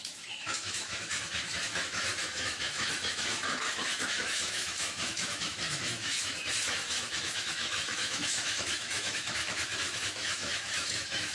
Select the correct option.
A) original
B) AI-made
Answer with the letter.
B